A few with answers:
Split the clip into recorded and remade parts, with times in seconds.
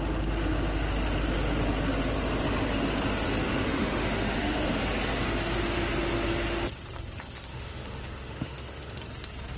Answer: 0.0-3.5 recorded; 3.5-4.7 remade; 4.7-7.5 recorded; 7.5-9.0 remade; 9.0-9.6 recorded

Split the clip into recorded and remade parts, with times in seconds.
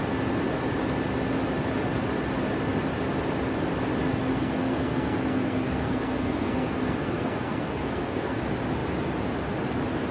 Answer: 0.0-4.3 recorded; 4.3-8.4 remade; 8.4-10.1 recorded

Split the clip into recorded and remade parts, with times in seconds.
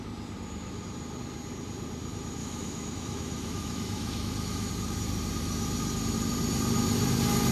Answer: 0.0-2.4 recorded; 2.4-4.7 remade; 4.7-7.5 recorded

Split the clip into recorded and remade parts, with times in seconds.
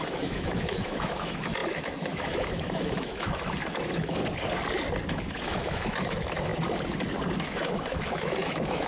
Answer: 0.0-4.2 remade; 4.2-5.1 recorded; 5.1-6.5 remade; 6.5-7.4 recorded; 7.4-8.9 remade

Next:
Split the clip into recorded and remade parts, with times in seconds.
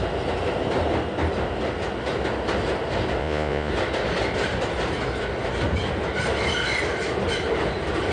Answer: 0.0-3.2 recorded; 3.2-3.7 remade; 3.7-8.1 recorded